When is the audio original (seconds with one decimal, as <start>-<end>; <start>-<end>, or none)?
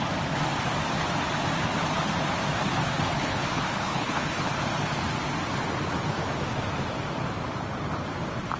0.0-3.1; 4.5-8.6